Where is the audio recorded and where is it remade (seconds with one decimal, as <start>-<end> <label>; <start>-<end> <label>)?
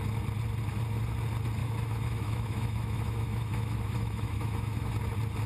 0.0-1.6 recorded; 1.6-4.9 remade; 4.9-5.5 recorded